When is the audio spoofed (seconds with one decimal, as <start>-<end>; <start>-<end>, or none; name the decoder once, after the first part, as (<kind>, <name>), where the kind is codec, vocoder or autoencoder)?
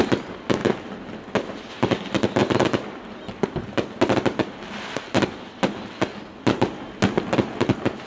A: none